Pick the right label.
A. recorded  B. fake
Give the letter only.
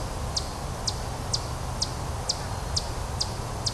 A